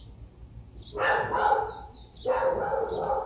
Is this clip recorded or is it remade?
recorded